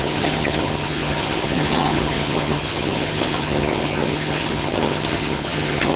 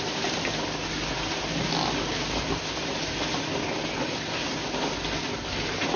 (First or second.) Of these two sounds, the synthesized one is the first